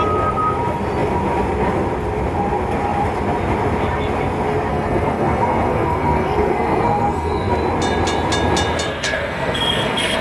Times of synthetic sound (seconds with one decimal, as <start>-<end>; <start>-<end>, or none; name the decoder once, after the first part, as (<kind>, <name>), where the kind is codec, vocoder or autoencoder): 4.7-7.5 (codec, SNAC); 8.9-10.2